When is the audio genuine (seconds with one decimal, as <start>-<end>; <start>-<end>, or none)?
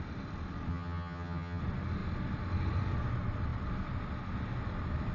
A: 0.0-0.7; 1.6-5.1